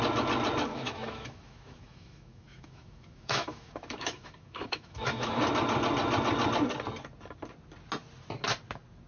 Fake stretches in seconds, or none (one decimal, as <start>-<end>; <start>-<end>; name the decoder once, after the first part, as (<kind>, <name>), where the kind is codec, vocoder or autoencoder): 0.7-5.4 (autoencoder, DAC-VAE)